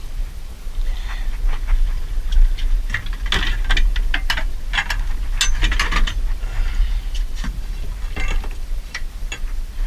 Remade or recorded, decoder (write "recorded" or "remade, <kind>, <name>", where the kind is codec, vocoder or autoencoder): recorded